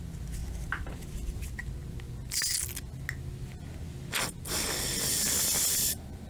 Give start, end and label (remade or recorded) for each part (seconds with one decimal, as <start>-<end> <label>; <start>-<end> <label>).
0.0-0.4 recorded; 0.4-1.4 remade; 1.4-5.7 recorded; 5.7-6.3 remade